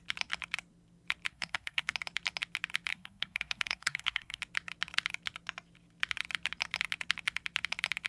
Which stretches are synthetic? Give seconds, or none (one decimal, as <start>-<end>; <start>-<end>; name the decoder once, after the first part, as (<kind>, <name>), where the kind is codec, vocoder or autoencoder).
1.3-1.9 (codec, SNAC); 2.9-4.4